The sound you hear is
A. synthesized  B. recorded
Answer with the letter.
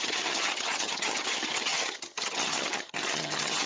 A